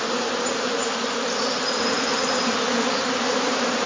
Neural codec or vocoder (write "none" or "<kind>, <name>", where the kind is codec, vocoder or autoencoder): vocoder, BigVGAN v2